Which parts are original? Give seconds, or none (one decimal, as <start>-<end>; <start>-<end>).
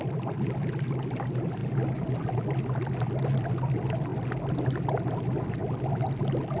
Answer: 0.0-6.6